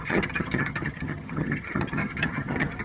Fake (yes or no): yes